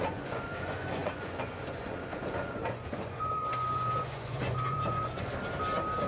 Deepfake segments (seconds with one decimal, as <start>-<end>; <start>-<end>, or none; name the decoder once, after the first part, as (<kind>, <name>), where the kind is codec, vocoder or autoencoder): 0.0-5.3 (vocoder, Vocos)